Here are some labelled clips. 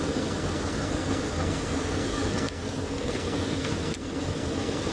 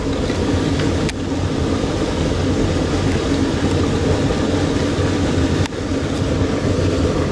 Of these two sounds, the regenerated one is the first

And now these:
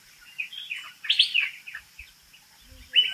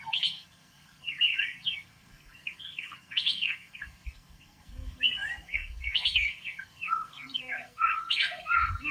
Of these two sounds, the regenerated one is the second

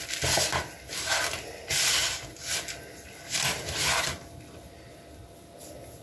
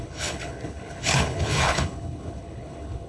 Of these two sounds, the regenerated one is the second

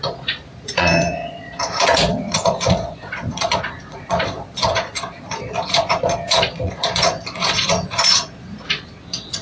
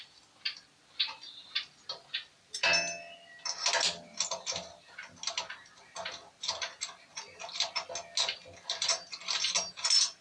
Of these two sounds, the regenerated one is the first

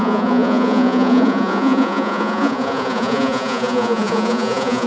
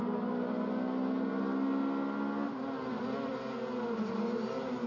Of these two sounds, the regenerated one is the first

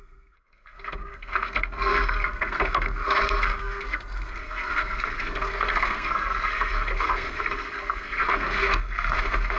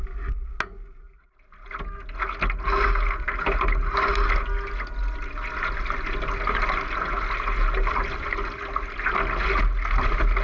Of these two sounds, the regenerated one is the first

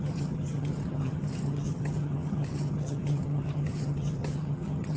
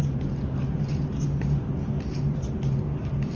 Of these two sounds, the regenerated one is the first